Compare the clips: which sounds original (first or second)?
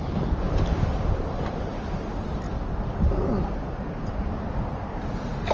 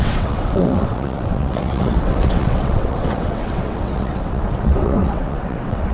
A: first